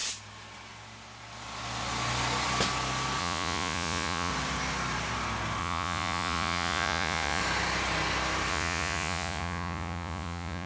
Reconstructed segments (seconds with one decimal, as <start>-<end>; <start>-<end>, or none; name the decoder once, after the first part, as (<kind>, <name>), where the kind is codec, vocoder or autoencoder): 3.2-4.3 (vocoder, Vocos); 5.6-7.4; 8.5-10.7

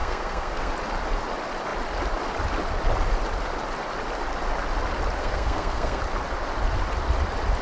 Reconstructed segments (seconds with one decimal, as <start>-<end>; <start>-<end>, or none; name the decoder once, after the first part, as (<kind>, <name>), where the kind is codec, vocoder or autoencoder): 0.0-0.7 (codec, SNAC); 5.2-6.0

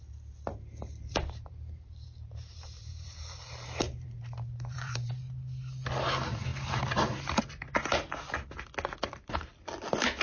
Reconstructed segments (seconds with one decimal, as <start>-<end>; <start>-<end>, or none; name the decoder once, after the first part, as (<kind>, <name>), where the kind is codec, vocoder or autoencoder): 0.5-5.1 (vocoder, BigVGAN v2)

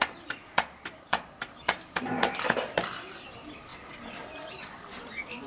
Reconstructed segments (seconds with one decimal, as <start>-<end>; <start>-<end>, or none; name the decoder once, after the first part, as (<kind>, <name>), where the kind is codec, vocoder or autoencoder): 0.0-5.5 (vocoder, BigVGAN v2)